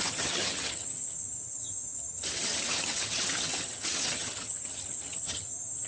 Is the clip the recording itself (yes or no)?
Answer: no